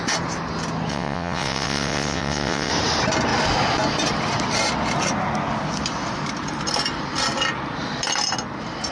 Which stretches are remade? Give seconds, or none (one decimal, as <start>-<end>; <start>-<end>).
0.9-2.7